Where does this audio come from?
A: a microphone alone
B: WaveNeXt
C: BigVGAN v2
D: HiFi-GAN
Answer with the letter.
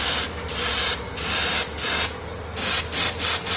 A